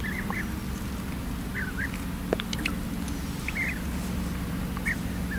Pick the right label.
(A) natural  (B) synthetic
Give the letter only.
A